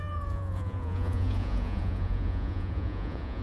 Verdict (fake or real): fake